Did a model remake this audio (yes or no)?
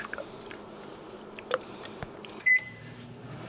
yes